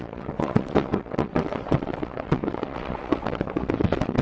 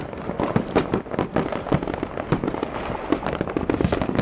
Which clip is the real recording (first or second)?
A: second